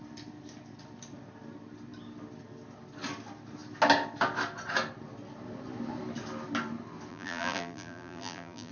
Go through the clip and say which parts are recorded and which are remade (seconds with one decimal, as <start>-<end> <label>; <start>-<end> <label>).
0.0-7.1 recorded; 7.1-8.7 remade